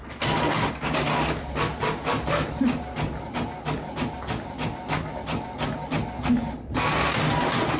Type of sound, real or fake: real